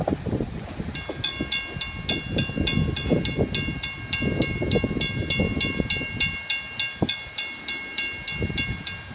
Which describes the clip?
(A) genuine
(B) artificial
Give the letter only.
A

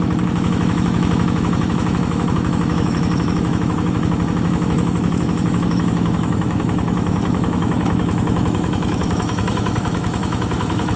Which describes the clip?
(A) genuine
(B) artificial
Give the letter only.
B